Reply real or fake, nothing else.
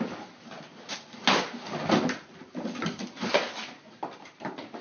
real